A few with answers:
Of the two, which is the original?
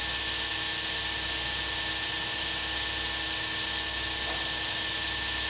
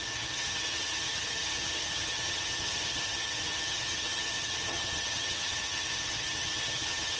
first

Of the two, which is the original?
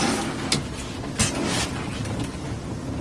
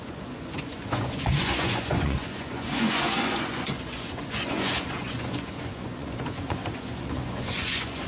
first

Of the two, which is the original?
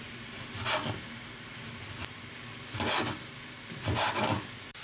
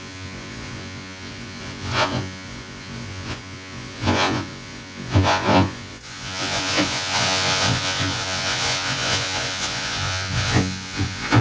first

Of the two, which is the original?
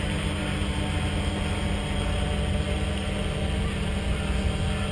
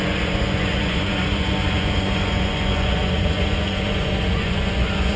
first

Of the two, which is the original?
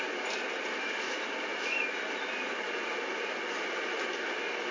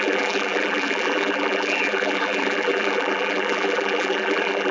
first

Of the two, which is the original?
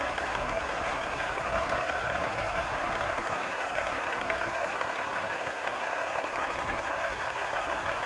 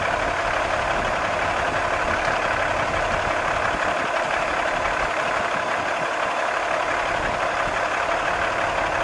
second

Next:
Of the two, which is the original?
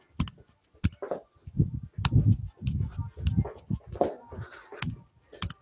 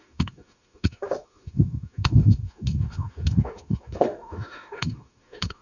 first